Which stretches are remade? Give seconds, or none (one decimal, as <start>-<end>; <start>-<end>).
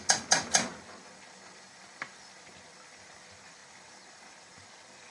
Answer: none